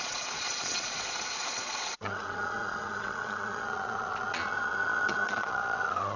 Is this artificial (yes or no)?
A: yes